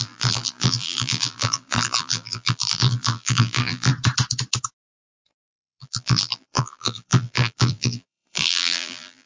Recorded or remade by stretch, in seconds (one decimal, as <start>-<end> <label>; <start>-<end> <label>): 0.0-3.9 remade; 3.9-5.2 recorded; 5.2-9.3 remade